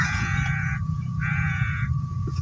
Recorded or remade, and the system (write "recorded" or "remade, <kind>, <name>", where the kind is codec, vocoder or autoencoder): remade, vocoder, Vocos